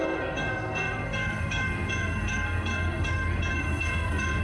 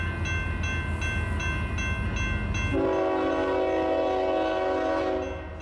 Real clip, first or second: second